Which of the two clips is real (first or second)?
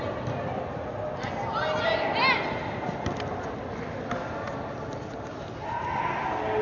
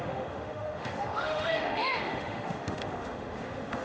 first